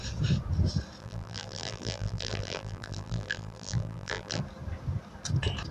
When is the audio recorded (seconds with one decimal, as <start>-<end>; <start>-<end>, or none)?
0.0-1.0; 4.4-5.7